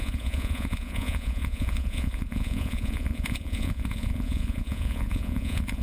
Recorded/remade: remade